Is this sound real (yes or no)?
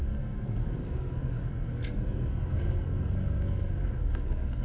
no